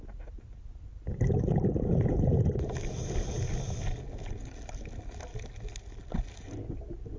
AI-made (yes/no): no